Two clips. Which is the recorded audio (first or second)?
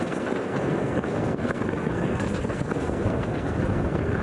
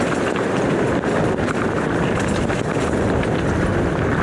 second